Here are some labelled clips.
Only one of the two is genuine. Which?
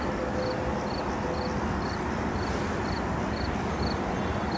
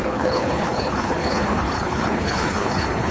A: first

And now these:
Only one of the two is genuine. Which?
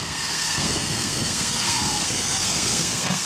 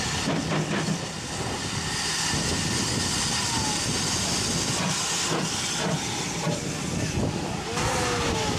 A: second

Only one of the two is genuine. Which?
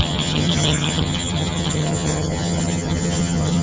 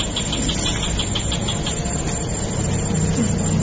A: second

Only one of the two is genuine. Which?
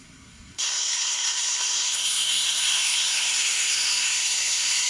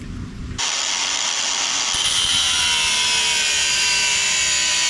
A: second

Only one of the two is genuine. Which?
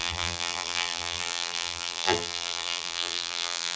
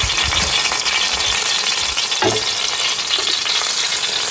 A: second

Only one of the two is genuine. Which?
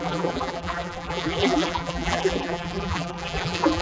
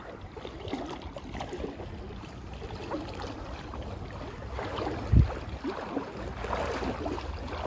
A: second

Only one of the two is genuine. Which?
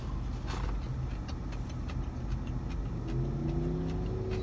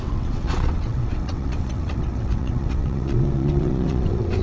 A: first